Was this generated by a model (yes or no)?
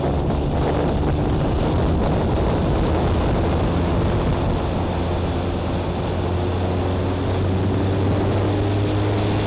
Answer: no